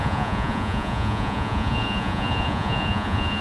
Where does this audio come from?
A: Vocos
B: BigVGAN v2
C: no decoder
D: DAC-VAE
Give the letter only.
A